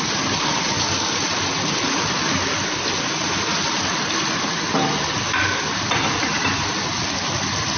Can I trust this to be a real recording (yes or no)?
yes